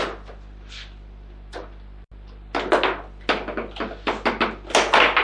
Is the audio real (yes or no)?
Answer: yes